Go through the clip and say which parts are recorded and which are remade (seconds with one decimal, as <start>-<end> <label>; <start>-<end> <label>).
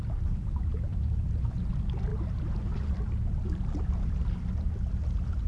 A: 0.0-0.9 recorded; 0.9-1.7 remade; 1.7-5.5 recorded